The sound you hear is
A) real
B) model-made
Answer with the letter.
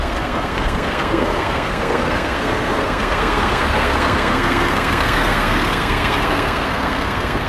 B